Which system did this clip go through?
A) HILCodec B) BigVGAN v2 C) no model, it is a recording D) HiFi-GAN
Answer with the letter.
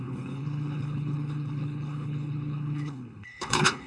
A